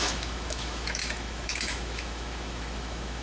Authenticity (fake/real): fake